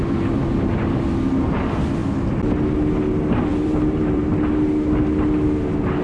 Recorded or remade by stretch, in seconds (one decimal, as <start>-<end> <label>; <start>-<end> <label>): 0.0-3.5 recorded; 3.5-4.2 remade; 4.2-6.0 recorded